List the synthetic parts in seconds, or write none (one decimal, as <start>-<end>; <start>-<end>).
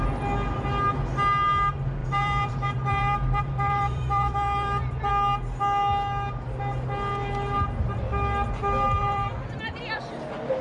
2.0-5.1; 9.0-9.6